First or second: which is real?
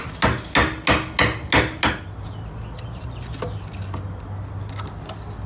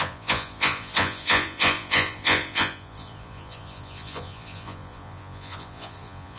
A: first